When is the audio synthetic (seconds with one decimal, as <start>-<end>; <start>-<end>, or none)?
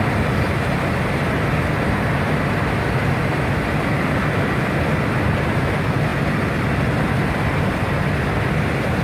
none